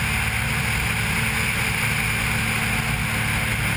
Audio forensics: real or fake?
real